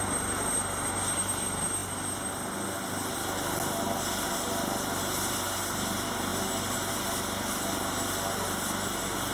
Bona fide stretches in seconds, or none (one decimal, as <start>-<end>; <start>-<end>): 0.0-9.3